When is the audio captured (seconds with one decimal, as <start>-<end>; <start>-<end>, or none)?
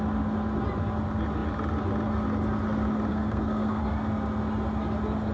0.0-3.1; 3.8-5.3